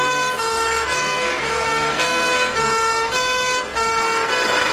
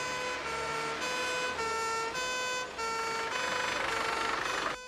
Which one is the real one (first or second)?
second